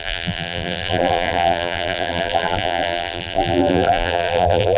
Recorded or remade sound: remade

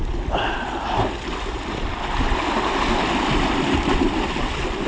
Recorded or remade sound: recorded